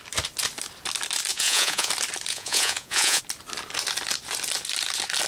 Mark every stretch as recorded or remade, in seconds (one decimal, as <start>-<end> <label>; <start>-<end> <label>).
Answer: 0.0-1.3 recorded; 1.3-1.9 remade; 1.9-2.3 recorded; 2.3-3.2 remade; 3.2-5.3 recorded